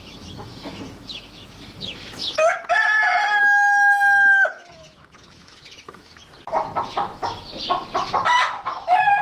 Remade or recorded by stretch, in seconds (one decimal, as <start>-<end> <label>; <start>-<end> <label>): 0.0-2.2 remade; 2.2-3.4 recorded; 3.4-6.2 remade; 6.2-6.8 recorded; 6.8-7.5 remade; 7.5-8.5 recorded; 8.5-9.2 remade

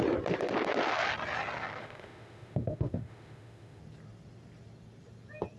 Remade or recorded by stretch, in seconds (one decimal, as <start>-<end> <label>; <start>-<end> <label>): 0.0-1.8 recorded; 1.8-3.8 remade; 3.8-5.6 recorded

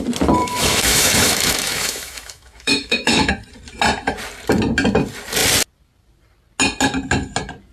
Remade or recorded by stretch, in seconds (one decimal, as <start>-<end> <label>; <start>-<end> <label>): 0.0-0.4 recorded; 0.4-3.3 remade; 3.3-7.7 recorded

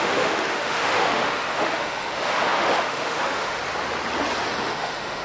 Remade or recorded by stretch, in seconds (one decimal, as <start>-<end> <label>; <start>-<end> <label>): 0.0-3.6 remade; 3.6-4.6 recorded; 4.6-5.2 remade